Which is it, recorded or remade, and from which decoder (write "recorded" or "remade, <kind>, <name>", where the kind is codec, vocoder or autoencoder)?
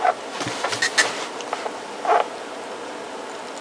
recorded